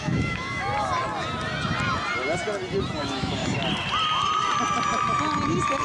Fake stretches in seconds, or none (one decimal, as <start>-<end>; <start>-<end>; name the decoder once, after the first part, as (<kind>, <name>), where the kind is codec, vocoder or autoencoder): 0.0-0.7 (autoencoder, DAC-VAE); 3.0-3.4